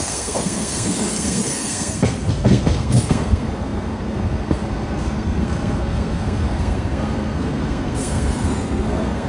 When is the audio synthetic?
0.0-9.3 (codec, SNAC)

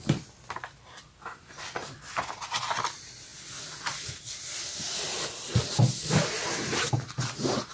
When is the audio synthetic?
none

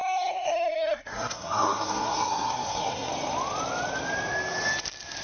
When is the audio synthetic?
0.0-3.1 (codec, SNAC)

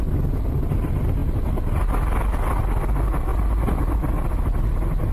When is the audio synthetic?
none

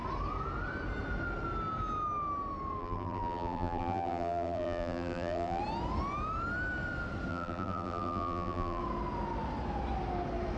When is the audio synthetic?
2.8-5.6 (vocoder, BigVGAN v2); 7.3-8.8